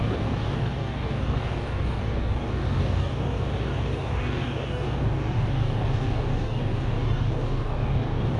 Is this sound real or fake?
fake